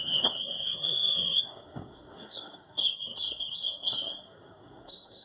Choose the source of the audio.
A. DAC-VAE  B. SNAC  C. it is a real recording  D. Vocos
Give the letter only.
B